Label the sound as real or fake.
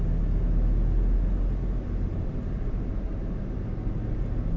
real